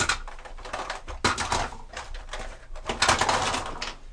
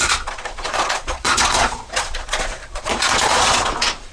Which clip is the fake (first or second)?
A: second